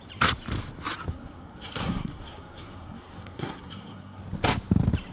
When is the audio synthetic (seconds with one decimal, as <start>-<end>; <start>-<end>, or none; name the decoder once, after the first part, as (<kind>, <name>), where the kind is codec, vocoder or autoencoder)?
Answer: 1.1-4.2 (codec, SNAC)